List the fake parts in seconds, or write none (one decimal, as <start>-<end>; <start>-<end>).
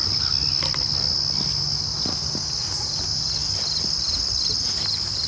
none